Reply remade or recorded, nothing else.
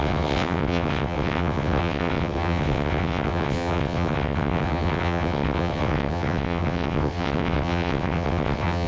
remade